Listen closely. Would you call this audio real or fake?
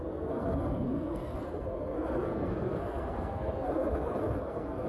fake